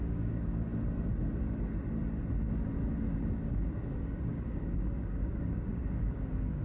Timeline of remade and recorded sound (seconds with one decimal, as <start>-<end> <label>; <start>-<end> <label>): 0.0-0.7 remade; 0.7-3.3 recorded; 3.3-6.6 remade